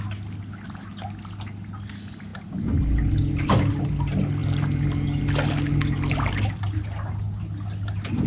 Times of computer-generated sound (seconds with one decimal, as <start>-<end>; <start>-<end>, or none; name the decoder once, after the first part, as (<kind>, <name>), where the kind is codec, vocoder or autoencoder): none